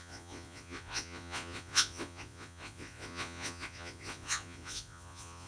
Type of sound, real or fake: fake